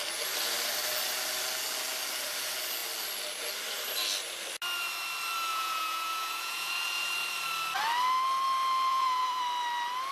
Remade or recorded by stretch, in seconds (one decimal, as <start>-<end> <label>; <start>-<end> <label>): 0.0-5.5 recorded; 5.5-6.7 remade; 6.7-8.9 recorded; 8.9-9.4 remade; 9.4-10.1 recorded